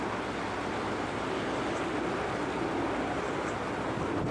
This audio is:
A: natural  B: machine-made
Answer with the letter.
A